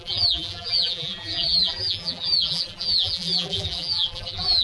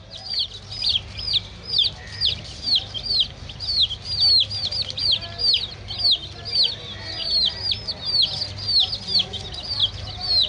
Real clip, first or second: second